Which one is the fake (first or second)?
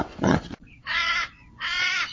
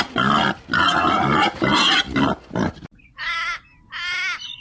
first